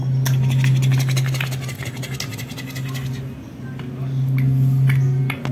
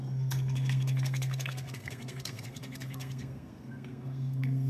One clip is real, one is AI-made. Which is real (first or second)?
first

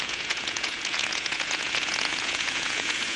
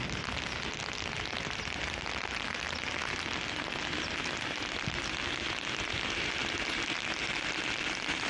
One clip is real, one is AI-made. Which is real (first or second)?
second